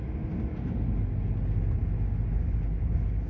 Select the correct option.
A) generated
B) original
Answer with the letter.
B